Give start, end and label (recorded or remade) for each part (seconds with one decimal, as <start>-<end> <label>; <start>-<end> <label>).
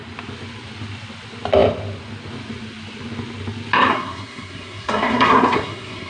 0.0-3.9 recorded; 3.9-6.1 remade